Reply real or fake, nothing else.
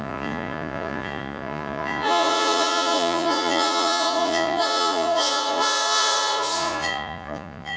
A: fake